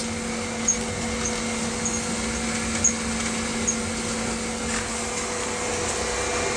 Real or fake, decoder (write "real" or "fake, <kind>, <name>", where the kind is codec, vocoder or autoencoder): real